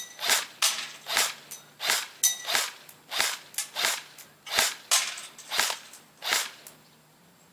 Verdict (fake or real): real